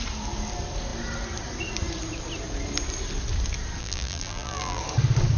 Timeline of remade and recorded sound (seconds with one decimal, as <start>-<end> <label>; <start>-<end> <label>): 0.0-3.8 recorded; 3.8-4.8 remade; 4.8-5.4 recorded